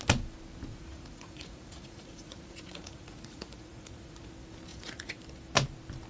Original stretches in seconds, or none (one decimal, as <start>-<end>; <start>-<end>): 0.0-0.7; 4.3-4.7; 5.2-6.1